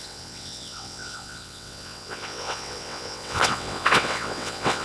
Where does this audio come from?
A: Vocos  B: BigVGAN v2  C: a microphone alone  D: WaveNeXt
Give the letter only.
D